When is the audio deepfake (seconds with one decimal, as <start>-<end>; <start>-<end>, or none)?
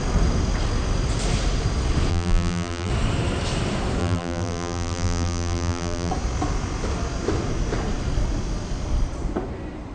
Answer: 2.1-2.9; 4.0-6.1